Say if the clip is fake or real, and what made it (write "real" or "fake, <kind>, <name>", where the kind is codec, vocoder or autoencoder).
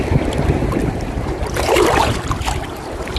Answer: real